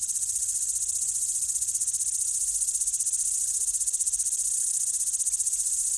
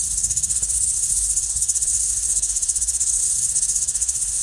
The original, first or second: first